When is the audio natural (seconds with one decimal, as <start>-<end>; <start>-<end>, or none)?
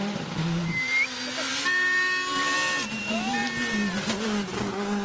0.0-5.0